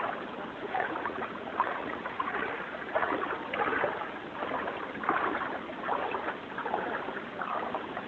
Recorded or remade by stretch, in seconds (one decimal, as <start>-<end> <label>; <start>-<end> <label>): 0.0-0.6 recorded; 0.6-3.3 remade; 3.3-8.1 recorded